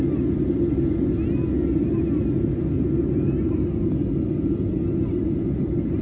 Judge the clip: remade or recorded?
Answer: recorded